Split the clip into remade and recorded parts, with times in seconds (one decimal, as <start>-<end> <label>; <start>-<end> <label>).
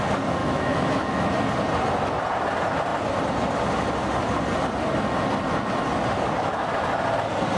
0.0-0.4 recorded; 0.4-1.3 remade; 1.3-7.6 recorded